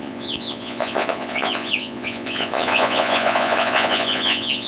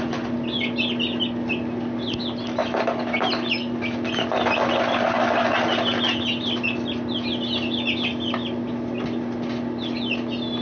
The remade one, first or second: first